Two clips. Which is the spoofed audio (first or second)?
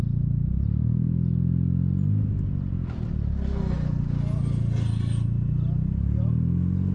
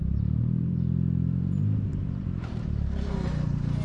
second